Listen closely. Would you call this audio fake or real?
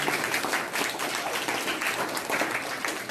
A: real